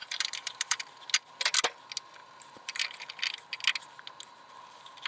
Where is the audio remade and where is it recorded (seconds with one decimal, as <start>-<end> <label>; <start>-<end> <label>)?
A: 0.0-0.8 remade; 0.8-2.2 recorded; 2.2-3.0 remade; 3.0-5.1 recorded